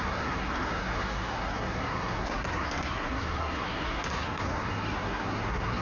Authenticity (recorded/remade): remade